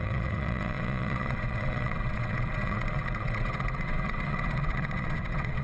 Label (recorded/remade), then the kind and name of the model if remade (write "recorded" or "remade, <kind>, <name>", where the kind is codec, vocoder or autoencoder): remade, vocoder, WaveNeXt